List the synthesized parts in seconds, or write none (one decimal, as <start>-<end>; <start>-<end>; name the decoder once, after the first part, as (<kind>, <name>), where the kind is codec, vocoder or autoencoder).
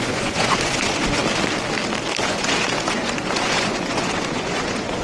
0.0-1.2 (vocoder, Vocos); 2.2-5.0